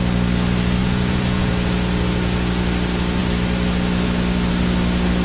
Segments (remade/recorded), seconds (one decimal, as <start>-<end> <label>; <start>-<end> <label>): 0.0-0.8 recorded; 0.8-1.5 remade; 1.5-5.2 recorded